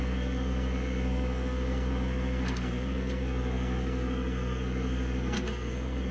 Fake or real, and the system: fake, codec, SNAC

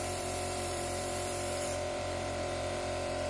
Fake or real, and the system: fake, vocoder, BigVGAN v2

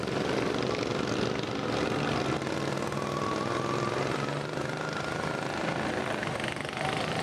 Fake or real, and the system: real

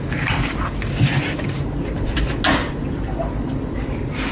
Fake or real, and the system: real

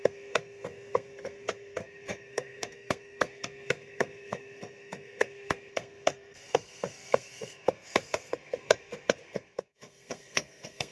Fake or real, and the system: fake, codec, SNAC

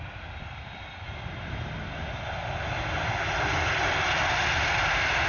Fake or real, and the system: real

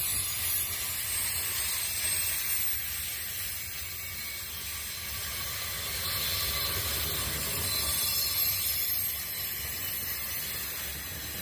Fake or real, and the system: real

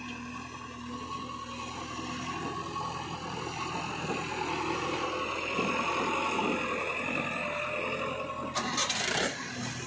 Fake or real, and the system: real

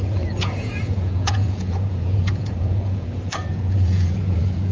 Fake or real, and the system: fake, vocoder, Vocos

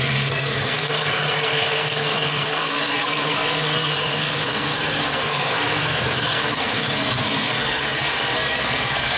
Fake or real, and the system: fake, codec, SNAC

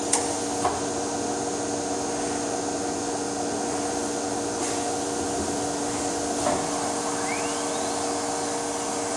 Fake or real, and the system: real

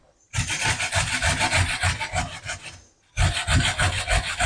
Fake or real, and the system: real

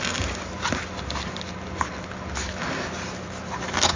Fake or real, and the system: real